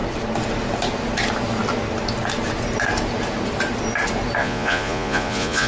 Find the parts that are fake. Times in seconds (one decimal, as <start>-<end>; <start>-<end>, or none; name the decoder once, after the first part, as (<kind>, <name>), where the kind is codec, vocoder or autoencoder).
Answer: 4.4-5.7 (vocoder, Vocos)

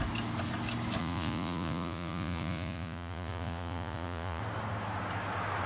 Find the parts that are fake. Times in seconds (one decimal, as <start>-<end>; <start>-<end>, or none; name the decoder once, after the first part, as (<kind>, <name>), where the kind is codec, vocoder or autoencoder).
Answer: 1.0-4.4 (vocoder, Vocos)

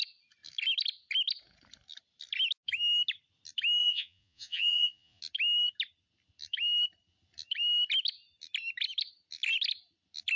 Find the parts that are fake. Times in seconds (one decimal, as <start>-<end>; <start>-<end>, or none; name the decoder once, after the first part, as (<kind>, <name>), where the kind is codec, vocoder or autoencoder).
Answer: 3.8-5.2 (vocoder, Vocos)

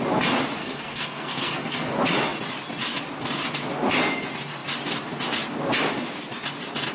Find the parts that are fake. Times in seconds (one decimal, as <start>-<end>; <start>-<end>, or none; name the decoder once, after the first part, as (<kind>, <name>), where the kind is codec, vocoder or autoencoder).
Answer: 0.6-1.9 (codec, SNAC)

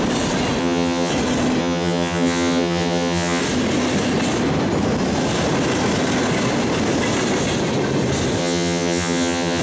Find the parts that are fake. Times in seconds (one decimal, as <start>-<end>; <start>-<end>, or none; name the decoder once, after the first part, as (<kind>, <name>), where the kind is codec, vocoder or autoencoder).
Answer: 0.6-1.1 (vocoder, HiFi-GAN); 1.6-3.4; 8.4-9.6